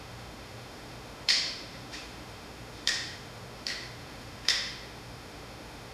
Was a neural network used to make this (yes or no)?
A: yes